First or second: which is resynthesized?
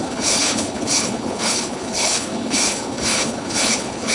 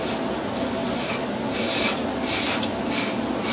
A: first